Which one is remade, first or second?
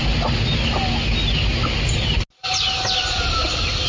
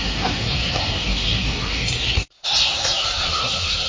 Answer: second